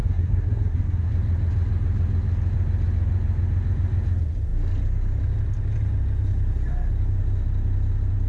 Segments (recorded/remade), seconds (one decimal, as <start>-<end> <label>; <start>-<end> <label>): 0.0-1.1 remade; 1.1-8.3 recorded